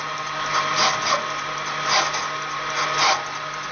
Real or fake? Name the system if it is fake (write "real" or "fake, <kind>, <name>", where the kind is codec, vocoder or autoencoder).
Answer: real